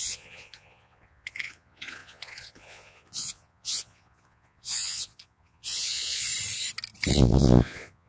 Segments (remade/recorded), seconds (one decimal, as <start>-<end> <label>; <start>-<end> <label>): 0.0-6.3 remade; 6.3-7.1 recorded; 7.1-8.1 remade